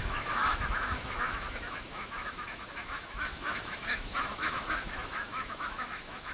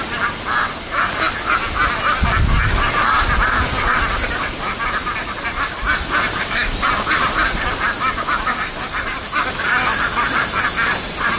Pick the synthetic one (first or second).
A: first